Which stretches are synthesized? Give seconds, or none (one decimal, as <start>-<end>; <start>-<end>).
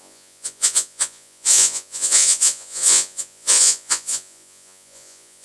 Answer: 0.0-5.4